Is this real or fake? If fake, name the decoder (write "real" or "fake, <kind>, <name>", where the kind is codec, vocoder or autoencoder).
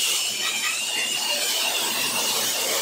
fake, vocoder, BigVGAN v2